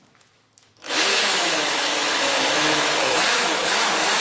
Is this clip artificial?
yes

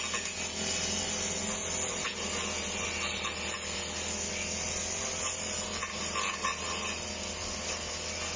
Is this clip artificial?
no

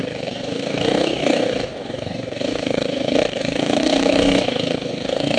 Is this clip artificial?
yes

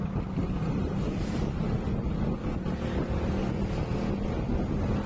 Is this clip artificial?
no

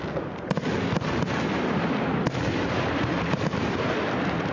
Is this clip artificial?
no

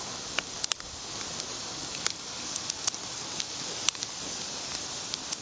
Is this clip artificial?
no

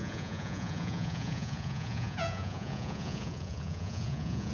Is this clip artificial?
yes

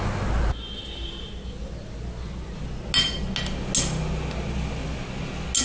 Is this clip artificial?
no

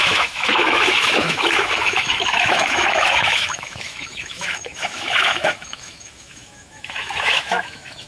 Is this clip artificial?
yes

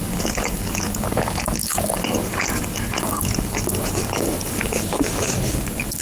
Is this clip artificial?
yes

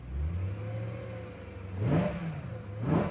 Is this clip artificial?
no